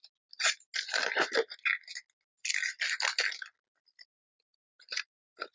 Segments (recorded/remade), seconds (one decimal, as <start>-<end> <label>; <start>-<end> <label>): 0.0-3.7 recorded; 3.7-5.5 remade